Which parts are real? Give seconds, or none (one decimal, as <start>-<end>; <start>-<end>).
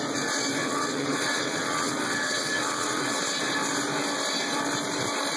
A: 0.0-0.6; 3.2-5.4